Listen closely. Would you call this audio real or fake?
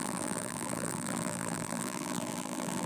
fake